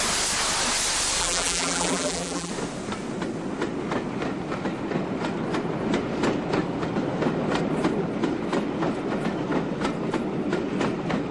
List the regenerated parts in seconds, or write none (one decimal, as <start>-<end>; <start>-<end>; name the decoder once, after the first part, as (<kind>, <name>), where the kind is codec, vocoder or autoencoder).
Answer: 1.2-2.5 (vocoder, BigVGAN v2)